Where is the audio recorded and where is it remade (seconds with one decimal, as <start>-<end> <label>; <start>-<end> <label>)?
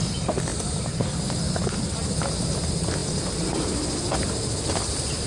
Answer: 0.0-5.3 recorded